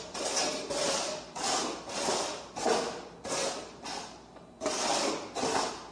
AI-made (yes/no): no